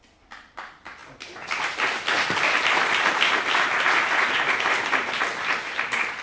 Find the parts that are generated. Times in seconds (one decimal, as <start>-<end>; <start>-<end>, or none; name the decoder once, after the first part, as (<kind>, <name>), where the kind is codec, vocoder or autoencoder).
none